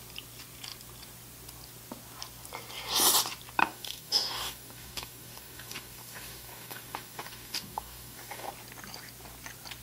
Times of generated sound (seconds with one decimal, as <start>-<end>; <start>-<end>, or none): 3.6-8.5